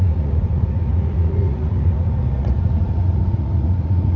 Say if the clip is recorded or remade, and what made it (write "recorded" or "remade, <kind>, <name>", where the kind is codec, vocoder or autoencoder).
remade, vocoder, Vocos